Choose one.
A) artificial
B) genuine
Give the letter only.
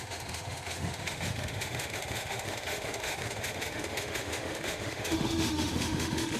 A